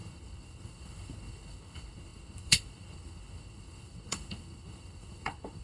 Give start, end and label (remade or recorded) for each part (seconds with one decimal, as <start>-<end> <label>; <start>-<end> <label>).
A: 0.0-5.6 remade

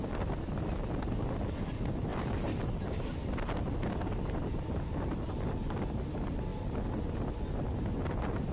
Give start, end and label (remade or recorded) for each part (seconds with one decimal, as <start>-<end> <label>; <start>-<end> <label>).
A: 0.0-8.5 recorded

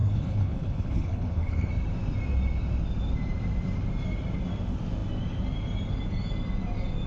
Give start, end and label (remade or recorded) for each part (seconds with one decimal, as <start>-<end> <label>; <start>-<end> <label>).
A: 0.0-1.7 remade; 1.7-7.1 recorded

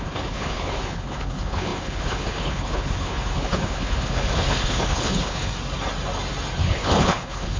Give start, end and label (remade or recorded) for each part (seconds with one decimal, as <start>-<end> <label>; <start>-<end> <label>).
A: 0.0-5.5 remade; 5.5-6.6 recorded; 6.6-7.6 remade